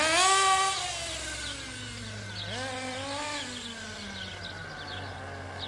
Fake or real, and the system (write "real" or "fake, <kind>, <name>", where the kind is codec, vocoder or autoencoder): real